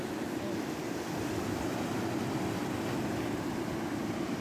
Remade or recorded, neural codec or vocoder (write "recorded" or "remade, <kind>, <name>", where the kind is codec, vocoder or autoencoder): recorded